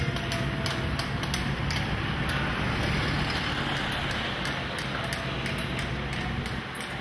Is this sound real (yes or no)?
yes